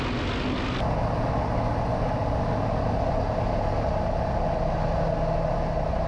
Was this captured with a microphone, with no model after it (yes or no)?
yes